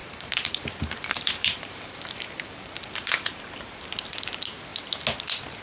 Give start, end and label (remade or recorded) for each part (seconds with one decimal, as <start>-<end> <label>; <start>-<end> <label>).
0.0-3.4 remade; 3.4-5.6 recorded